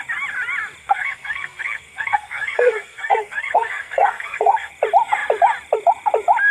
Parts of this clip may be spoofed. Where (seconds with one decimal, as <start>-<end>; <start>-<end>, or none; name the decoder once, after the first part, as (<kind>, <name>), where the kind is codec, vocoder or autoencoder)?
0.8-4.7 (codec, SNAC)